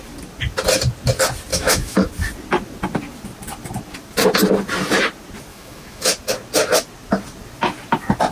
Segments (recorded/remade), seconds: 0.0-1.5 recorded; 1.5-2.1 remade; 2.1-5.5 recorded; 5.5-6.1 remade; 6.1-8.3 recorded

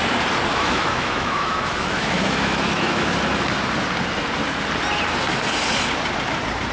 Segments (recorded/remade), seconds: 0.0-0.5 recorded; 0.5-3.1 remade; 3.1-6.7 recorded

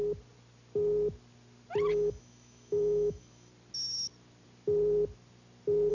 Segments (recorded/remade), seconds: 0.0-1.9 recorded; 1.9-3.5 remade; 3.5-5.9 recorded